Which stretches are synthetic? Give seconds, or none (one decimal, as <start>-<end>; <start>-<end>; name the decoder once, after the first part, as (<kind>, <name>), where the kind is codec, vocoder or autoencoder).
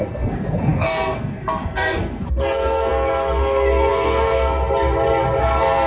0.0-4.6 (codec, SNAC); 5.4-5.9